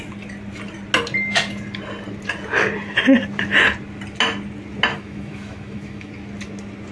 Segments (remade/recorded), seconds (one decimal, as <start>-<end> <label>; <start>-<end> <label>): 0.0-4.9 recorded; 4.9-6.1 remade; 6.1-6.9 recorded